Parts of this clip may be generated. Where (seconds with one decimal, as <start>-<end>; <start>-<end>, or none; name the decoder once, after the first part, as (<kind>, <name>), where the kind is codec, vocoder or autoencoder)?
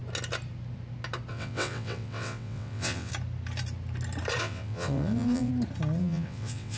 1.3-3.1 (vocoder, WaveNeXt); 4.4-5.5; 6.0-6.8